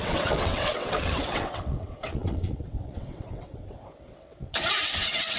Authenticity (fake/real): fake